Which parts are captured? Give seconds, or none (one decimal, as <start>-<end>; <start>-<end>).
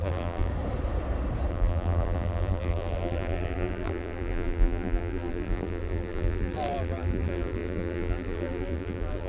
0.5-1.5